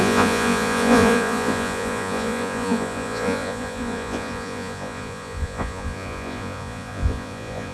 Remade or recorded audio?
remade